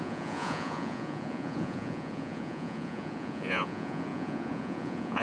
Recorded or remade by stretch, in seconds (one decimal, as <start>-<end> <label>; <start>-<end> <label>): 0.0-5.2 remade